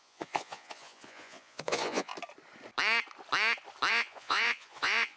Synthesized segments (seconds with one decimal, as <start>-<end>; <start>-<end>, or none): 0.0-2.1; 3.9-5.2